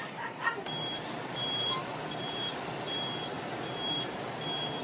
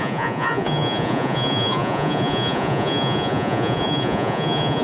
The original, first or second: first